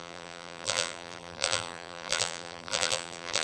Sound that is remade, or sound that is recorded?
remade